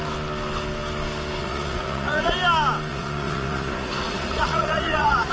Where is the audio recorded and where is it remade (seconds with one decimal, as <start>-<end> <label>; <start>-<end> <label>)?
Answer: 0.0-1.4 recorded; 1.4-2.3 remade; 2.3-2.9 recorded; 2.9-5.3 remade